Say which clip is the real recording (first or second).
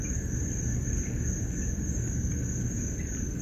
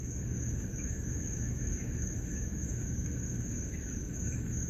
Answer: first